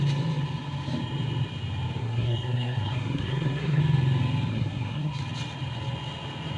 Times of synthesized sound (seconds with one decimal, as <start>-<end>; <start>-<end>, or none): 2.0-3.8; 4.5-5.2